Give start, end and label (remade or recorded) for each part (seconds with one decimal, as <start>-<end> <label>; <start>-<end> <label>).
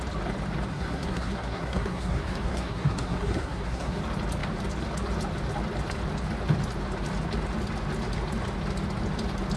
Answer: 0.0-0.7 recorded; 0.7-4.0 remade; 4.0-9.6 recorded